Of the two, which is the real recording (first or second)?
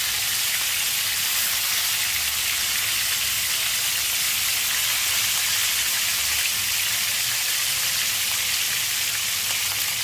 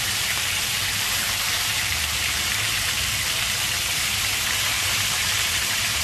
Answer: first